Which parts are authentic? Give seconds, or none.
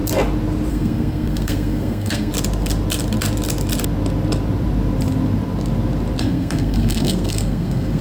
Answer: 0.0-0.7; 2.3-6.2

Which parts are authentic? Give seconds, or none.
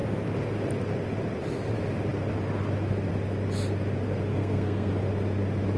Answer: 0.0-4.3; 4.9-5.8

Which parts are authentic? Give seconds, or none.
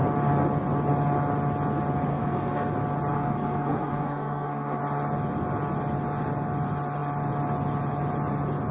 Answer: 0.0-2.1; 2.7-3.1; 4.8-8.7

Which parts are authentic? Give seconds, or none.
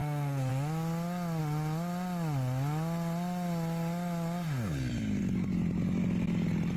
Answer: 0.5-6.8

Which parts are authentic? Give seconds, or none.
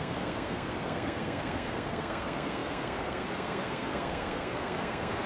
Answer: none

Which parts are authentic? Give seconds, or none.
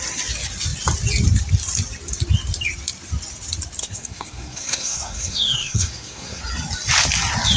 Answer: 0.0-3.8; 6.4-7.6